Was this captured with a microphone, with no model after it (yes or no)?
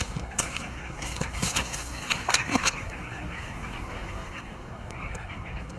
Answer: no